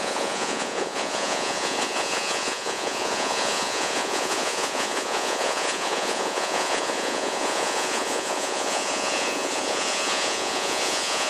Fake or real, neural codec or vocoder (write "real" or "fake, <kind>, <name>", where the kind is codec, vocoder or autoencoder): fake, vocoder, Vocos